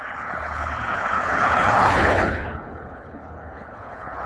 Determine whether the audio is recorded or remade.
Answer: remade